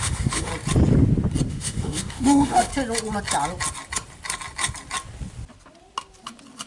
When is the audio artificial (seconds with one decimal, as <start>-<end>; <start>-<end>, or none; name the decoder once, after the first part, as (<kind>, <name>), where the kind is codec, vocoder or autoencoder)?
0.0-0.5 (autoencoder, DAC-VAE); 1.5-2.7